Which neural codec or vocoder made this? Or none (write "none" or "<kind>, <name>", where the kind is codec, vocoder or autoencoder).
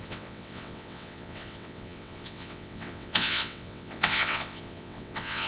vocoder, WaveNeXt